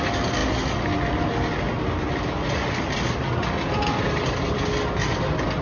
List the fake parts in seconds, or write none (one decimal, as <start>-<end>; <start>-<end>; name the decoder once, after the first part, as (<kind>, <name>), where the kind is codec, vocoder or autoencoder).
none